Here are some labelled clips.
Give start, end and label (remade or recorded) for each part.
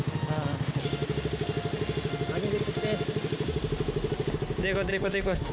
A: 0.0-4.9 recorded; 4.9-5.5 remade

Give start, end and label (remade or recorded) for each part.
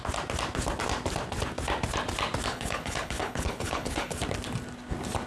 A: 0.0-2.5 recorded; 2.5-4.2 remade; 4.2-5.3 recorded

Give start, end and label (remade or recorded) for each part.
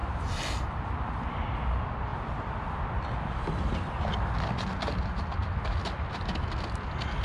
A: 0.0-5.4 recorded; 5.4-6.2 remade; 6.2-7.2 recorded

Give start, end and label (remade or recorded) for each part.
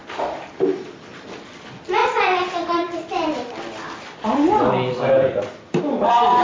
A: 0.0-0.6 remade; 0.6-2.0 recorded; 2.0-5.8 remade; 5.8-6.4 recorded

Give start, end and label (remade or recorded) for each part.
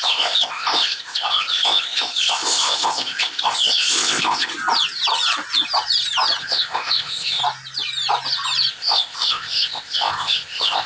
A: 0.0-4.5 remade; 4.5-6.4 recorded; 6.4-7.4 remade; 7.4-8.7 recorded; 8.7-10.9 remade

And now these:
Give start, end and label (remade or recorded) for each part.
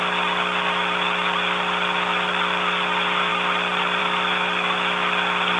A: 0.0-5.6 recorded